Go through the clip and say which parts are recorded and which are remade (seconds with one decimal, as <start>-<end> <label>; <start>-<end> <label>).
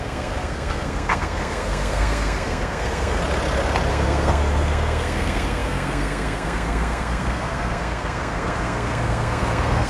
0.0-3.2 remade; 3.2-3.9 recorded; 3.9-9.9 remade